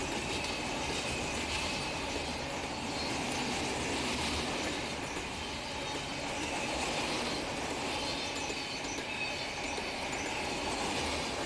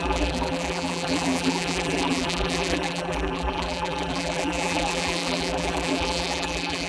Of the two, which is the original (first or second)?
first